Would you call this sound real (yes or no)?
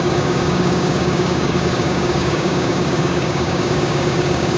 no